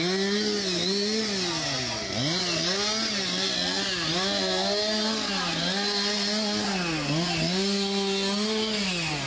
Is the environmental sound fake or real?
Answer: real